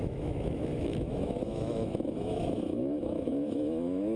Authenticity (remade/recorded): remade